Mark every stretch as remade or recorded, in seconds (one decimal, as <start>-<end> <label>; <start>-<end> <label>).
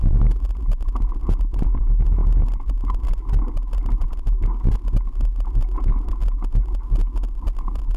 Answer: 0.0-8.0 recorded